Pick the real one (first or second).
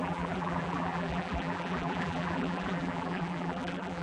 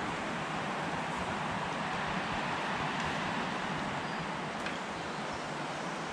second